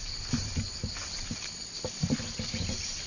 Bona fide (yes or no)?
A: no